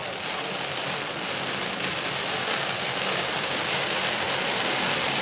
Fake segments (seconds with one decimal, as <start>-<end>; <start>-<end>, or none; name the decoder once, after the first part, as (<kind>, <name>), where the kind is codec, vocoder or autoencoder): 2.5-3.7 (codec, DAC)